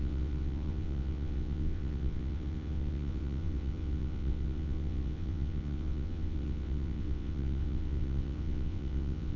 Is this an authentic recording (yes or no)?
no